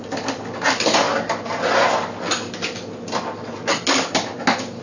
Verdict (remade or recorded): recorded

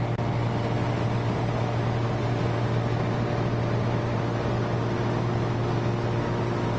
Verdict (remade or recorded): recorded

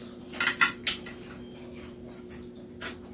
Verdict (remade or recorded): recorded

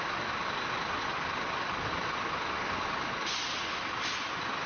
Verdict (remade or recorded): recorded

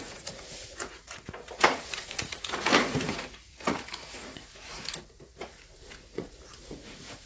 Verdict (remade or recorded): remade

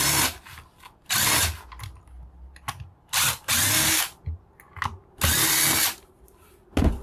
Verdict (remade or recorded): recorded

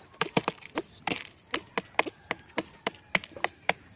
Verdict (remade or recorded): recorded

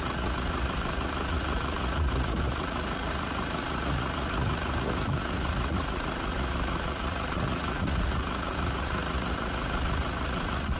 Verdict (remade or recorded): remade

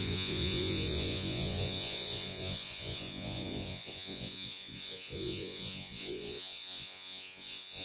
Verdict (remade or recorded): remade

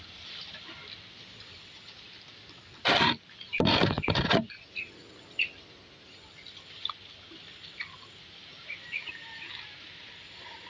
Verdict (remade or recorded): recorded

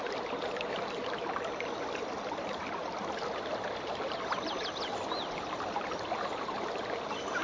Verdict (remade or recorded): recorded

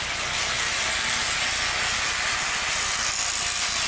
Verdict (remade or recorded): recorded